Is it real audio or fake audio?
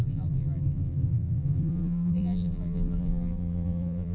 fake